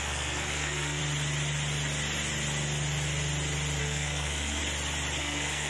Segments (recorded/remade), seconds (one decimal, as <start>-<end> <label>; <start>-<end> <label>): 0.0-1.0 remade; 1.0-3.8 recorded; 3.8-4.6 remade; 4.6-5.2 recorded; 5.2-5.7 remade